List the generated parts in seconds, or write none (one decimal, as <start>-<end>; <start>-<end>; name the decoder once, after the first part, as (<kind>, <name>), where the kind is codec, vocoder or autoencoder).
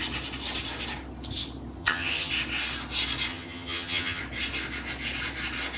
1.8-2.3 (vocoder, HiFi-GAN); 3.3-4.2